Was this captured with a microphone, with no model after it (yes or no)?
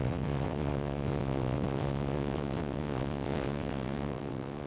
no